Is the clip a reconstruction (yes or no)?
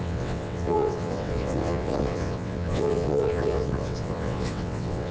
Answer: yes